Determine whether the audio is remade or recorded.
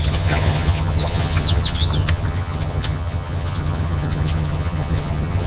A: remade